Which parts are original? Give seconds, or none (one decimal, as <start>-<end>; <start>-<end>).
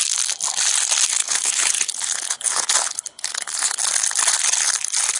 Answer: 0.0-1.2; 3.8-5.2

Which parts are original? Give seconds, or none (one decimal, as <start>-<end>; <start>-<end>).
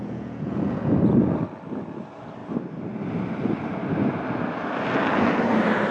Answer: 0.9-5.9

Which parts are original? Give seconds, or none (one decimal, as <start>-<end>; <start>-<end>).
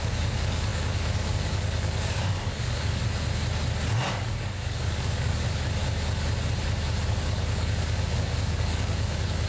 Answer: 3.0-4.1; 5.8-7.1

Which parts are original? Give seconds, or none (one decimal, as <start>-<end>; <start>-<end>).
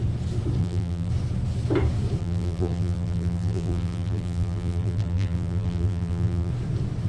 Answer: 0.0-0.6; 1.1-2.2; 6.5-7.1